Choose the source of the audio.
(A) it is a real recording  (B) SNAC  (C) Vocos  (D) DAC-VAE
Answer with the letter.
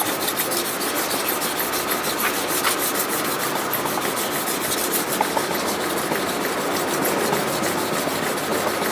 A